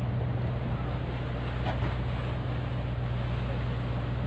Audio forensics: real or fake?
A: real